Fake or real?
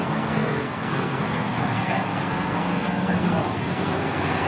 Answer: fake